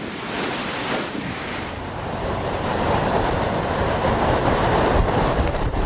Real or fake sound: fake